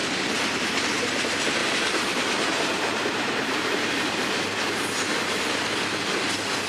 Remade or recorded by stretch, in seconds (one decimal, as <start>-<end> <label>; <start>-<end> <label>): 0.0-1.6 recorded; 1.6-5.6 remade; 5.6-6.7 recorded